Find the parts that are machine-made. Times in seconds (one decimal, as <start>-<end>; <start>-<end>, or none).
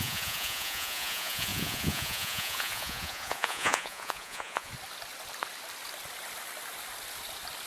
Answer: 0.0-4.7